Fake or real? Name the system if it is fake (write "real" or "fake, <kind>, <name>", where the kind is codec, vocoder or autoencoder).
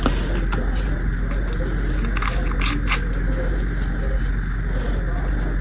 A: real